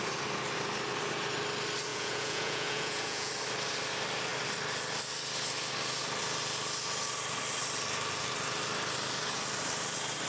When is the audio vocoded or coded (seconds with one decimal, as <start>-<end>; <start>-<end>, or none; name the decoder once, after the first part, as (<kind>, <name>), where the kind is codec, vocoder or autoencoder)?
1.9-3.3 (vocoder, Vocos)